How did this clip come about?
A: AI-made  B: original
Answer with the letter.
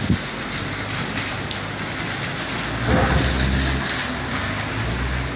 B